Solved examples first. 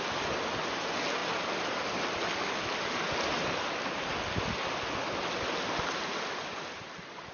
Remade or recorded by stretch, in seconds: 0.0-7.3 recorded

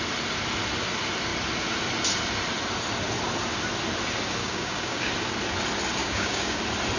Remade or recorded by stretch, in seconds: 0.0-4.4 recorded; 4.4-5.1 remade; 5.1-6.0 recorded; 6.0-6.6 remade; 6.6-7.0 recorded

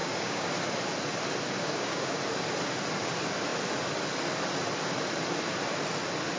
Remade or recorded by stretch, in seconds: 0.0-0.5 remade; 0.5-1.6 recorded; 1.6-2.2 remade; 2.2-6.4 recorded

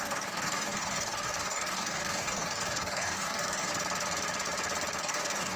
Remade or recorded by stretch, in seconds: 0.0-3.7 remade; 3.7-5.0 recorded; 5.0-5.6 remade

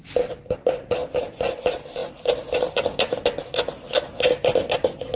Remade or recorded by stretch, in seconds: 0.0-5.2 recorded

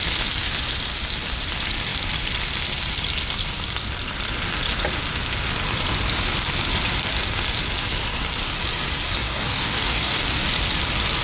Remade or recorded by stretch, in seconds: 0.0-9.2 recorded; 9.2-10.2 remade; 10.2-11.2 recorded

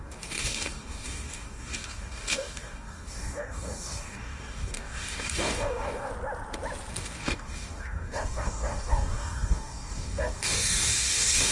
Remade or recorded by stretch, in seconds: 0.0-6.1 remade; 6.1-6.9 recorded; 6.9-11.5 remade

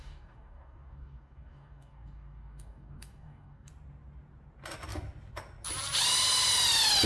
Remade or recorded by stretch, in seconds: 0.0-3.7 remade; 3.7-7.1 recorded